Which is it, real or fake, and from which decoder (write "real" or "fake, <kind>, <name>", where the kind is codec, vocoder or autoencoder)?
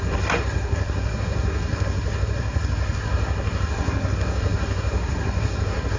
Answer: fake, codec, SNAC